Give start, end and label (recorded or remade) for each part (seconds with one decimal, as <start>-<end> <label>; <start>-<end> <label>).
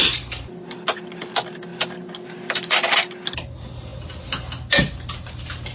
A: 0.0-5.7 recorded